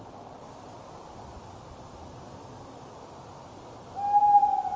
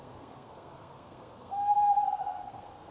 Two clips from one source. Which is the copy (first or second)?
second